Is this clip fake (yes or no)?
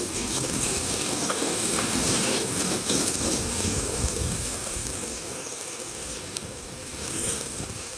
yes